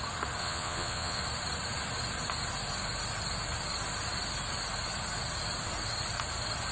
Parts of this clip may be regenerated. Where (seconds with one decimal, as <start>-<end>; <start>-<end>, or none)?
0.4-1.2